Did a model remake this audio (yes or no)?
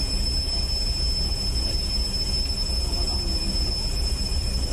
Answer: no